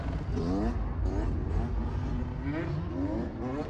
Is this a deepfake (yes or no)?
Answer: no